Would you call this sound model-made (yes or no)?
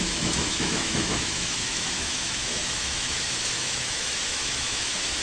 yes